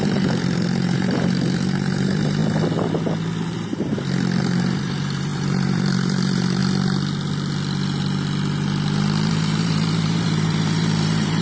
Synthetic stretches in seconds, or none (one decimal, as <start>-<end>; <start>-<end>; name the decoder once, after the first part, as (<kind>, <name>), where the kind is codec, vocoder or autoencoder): 0.0-2.4 (vocoder, BigVGAN v2); 3.4-3.9; 4.4-6.6; 9.3-11.4